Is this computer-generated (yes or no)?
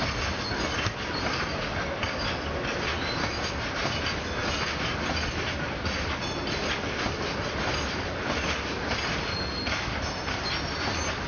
no